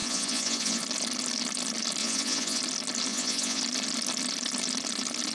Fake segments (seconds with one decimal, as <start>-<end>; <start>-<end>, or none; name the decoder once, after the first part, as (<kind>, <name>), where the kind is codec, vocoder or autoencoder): 0.0-0.8 (vocoder, Vocos); 2.0-2.6; 3.1-3.6